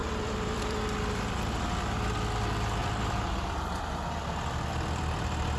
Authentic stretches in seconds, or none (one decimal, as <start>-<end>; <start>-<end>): 1.6-2.8; 4.2-5.6